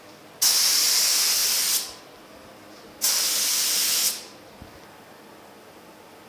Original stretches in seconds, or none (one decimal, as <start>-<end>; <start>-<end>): 0.0-6.3